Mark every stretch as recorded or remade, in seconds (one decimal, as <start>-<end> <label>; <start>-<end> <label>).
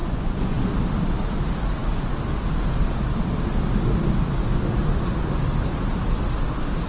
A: 0.0-0.6 remade; 0.6-6.9 recorded